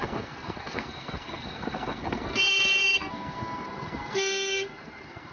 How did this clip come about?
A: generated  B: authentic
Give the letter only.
A